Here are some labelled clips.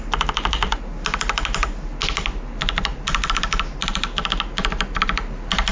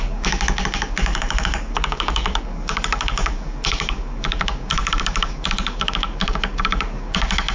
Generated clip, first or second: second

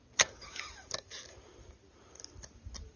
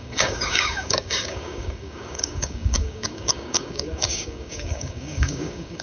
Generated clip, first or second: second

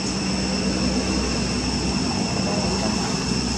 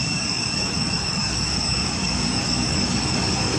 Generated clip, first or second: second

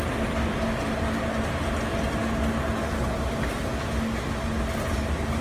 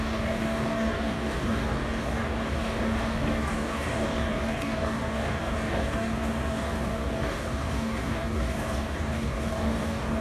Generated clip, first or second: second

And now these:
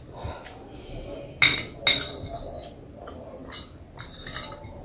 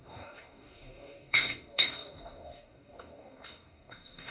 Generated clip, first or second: second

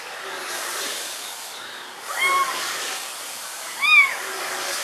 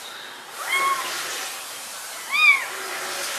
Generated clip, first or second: first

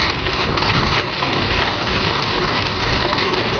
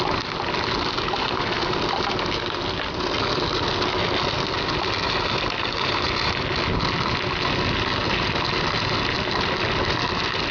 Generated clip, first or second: first